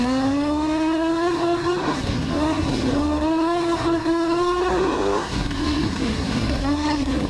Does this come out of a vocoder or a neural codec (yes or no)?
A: yes